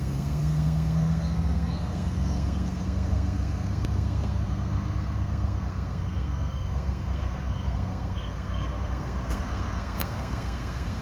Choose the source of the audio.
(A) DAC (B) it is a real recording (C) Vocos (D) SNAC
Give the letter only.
D